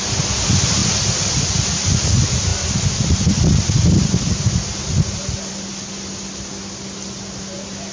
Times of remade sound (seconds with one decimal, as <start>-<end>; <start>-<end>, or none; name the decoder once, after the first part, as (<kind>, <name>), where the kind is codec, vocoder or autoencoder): none